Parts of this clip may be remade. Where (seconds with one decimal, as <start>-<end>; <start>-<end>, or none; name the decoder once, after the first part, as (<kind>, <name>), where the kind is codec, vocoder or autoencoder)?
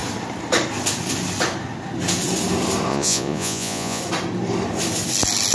2.9-4.0 (vocoder, Vocos)